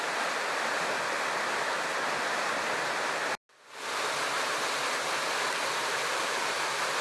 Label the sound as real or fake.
real